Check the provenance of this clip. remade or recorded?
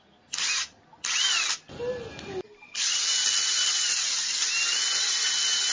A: recorded